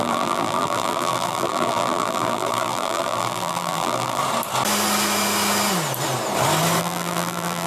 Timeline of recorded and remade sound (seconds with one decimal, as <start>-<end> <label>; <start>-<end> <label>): 0.0-4.2 remade; 4.2-6.8 recorded; 6.8-7.7 remade